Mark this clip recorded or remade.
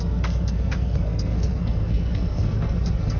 remade